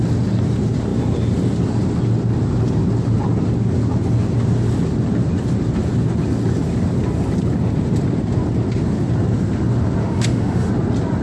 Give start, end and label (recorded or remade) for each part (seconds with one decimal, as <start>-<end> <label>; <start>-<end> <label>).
0.0-10.0 recorded; 10.0-10.7 remade; 10.7-11.2 recorded